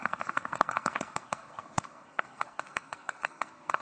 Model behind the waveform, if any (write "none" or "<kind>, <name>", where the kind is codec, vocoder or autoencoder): codec, SNAC